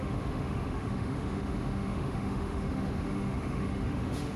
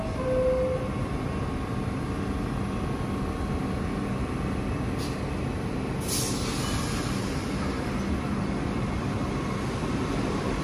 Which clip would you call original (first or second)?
second